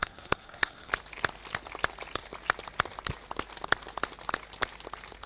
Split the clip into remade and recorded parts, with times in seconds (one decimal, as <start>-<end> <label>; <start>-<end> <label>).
0.0-0.9 remade; 0.9-5.3 recorded